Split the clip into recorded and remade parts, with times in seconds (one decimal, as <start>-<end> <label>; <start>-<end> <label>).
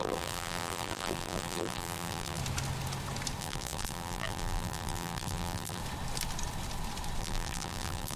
0.0-2.4 remade; 2.4-3.4 recorded; 3.4-5.8 remade; 5.8-7.2 recorded; 7.2-8.2 remade